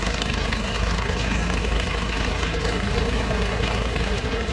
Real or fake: fake